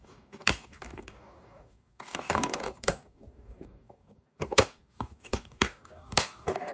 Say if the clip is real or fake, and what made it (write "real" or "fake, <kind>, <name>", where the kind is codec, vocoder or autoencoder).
fake, codec, DAC